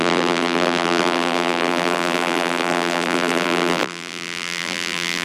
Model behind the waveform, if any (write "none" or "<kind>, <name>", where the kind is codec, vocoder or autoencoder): vocoder, BigVGAN v2